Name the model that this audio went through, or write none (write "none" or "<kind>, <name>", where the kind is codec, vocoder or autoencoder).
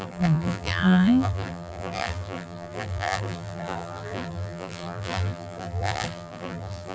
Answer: vocoder, BigVGAN v2